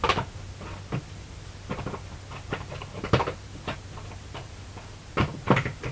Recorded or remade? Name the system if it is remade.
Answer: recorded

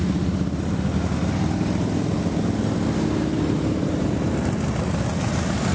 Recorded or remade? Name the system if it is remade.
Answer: recorded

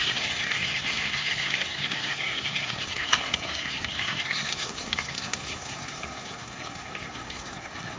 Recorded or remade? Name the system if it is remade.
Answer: remade, codec, SNAC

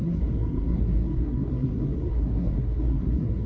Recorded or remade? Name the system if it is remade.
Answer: remade, codec, SNAC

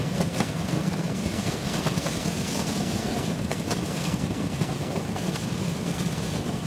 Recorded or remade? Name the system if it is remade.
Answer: remade, codec, SNAC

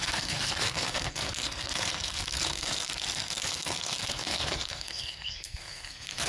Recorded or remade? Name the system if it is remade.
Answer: remade, codec, SNAC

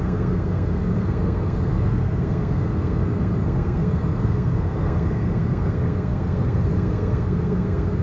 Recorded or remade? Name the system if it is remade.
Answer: remade, codec, SNAC